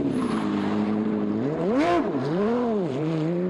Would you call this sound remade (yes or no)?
yes